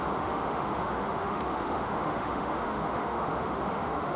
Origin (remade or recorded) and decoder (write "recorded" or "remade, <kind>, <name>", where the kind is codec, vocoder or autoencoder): remade, autoencoder, DAC-VAE